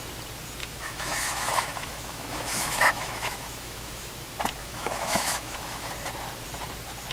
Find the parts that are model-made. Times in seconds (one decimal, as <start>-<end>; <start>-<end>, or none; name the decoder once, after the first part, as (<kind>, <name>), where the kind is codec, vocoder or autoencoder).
0.6-4.1 (autoencoder, DAC-VAE); 4.6-5.9